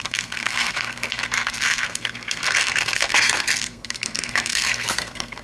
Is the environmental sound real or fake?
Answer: fake